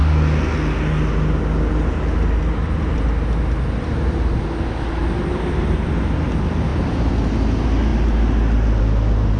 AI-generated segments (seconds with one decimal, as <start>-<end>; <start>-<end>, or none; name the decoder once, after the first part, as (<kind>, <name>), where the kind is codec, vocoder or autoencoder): none